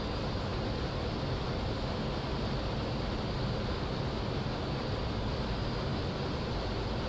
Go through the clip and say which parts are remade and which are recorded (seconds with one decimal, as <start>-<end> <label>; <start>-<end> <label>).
0.0-7.1 recorded